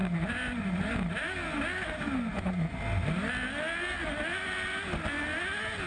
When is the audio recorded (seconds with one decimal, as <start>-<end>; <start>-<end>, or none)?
0.0-2.3; 2.8-5.9